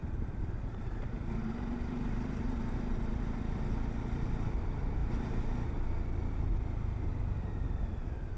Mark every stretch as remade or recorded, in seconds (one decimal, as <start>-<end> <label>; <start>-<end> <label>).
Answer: 0.0-3.0 remade; 3.0-5.0 recorded; 5.0-5.7 remade; 5.7-8.4 recorded